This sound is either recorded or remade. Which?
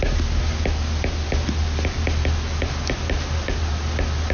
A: recorded